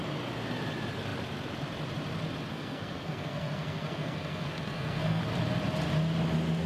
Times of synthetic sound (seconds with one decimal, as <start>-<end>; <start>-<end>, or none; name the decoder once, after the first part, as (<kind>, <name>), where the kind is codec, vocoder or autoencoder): 2.5-5.2 (codec, SNAC)